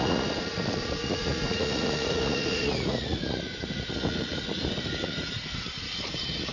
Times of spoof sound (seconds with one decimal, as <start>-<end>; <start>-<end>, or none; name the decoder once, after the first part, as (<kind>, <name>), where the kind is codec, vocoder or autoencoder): 0.0-6.5 (vocoder, Vocos)